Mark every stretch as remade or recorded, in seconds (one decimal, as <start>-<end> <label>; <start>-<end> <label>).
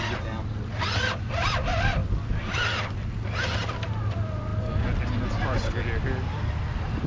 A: 0.0-2.0 remade; 2.0-3.7 recorded; 3.7-4.5 remade; 4.5-6.6 recorded; 6.6-7.1 remade